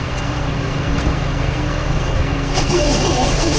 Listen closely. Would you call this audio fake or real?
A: fake